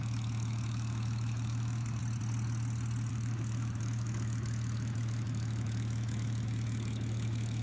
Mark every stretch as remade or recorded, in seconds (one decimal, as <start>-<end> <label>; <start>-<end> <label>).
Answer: 0.0-2.0 remade; 2.0-3.1 recorded; 3.1-7.6 remade

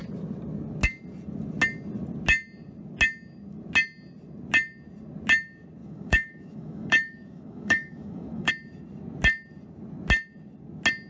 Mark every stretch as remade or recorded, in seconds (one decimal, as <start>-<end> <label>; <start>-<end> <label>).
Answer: 0.0-5.8 recorded; 5.8-8.5 remade; 8.5-11.1 recorded